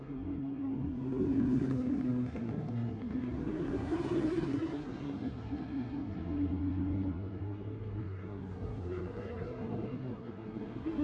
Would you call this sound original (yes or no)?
no